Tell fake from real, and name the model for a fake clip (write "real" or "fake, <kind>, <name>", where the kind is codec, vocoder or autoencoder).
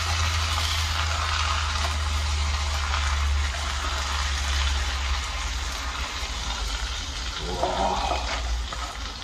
real